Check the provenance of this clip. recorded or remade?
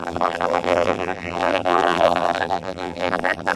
remade